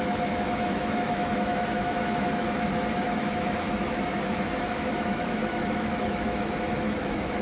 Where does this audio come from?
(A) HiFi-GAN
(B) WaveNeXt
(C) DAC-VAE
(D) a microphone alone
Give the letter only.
C